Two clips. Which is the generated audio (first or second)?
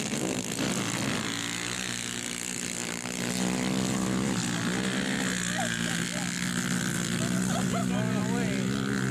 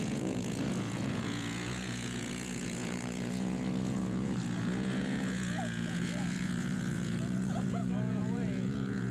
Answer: second